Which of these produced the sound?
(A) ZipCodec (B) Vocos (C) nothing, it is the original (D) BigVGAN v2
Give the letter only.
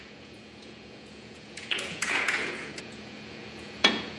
B